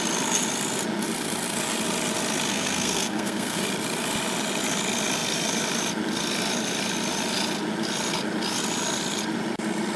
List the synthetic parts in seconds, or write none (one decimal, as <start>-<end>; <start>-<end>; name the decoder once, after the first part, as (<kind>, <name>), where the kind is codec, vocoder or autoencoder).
2.5-3.6 (codec, SNAC)